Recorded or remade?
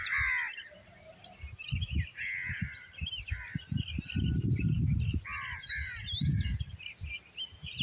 recorded